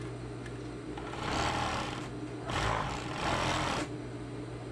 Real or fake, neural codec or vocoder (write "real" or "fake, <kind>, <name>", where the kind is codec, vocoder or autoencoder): real